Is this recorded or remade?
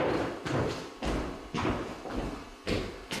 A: recorded